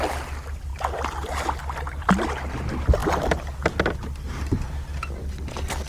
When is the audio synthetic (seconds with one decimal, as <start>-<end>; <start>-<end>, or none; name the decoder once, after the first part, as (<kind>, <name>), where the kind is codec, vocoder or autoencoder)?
none